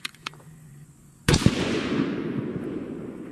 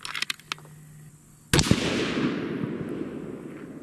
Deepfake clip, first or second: first